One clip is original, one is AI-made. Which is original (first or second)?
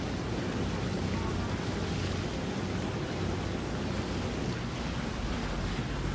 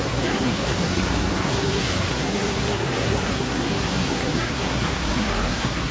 first